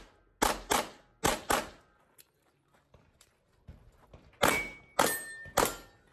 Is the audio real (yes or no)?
yes